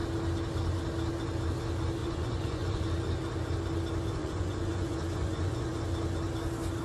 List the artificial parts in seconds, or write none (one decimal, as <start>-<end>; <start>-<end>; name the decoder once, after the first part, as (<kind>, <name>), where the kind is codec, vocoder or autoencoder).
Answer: 2.0-2.8 (vocoder, Vocos); 4.2-5.8